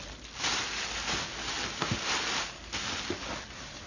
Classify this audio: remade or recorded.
recorded